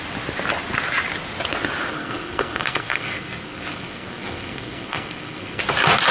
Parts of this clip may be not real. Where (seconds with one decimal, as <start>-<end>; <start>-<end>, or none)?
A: 1.9-5.6